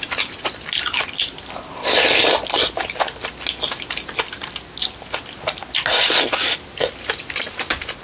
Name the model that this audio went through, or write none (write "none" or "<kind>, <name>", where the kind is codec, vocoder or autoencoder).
none